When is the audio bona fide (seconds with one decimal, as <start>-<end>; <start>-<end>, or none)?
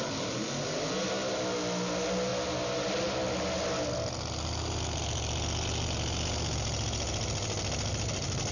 0.0-8.5